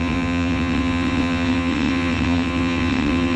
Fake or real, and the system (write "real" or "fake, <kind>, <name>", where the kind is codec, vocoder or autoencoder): fake, vocoder, WaveNeXt